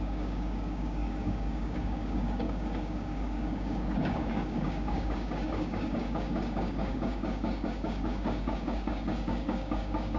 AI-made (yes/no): yes